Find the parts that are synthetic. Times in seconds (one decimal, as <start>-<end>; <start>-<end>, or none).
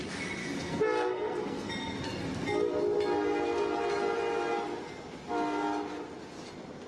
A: 0.4-1.7